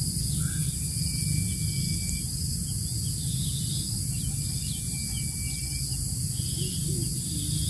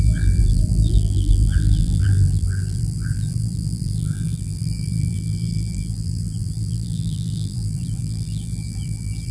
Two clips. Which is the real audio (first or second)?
first